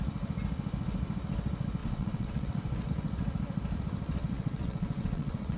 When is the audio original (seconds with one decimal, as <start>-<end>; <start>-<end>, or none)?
0.0-1.8; 2.9-4.2